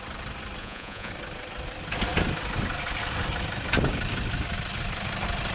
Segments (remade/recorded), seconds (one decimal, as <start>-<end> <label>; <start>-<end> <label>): 0.0-0.6 recorded; 0.6-1.1 remade; 1.1-5.5 recorded